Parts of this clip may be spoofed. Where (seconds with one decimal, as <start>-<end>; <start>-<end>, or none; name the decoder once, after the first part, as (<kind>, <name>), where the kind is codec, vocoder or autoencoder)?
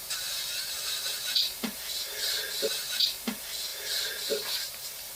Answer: 0.0-3.0 (vocoder, BigVGAN v2); 3.7-5.1